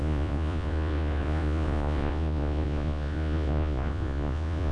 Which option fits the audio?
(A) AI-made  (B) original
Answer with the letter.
A